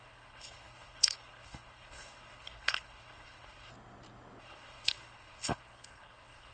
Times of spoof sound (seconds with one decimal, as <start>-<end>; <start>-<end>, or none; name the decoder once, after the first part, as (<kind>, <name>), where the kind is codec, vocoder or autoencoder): 0.0-3.7 (codec, HILCodec); 4.4-6.5